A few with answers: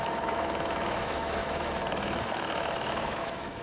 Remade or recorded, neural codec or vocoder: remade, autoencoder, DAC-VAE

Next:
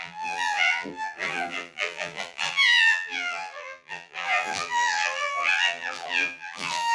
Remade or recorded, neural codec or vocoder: remade, vocoder, BigVGAN v2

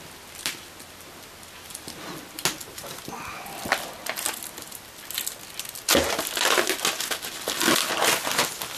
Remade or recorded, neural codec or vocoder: recorded